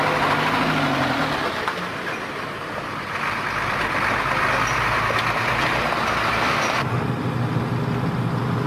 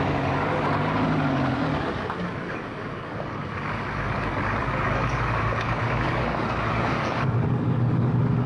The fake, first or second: second